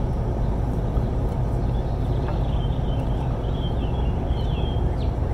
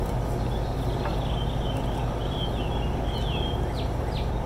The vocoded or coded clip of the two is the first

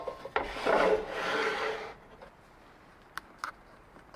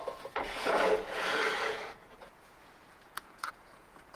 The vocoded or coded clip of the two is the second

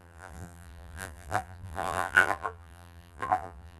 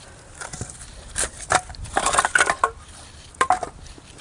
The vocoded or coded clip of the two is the first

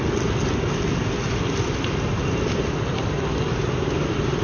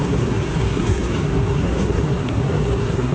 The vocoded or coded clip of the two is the second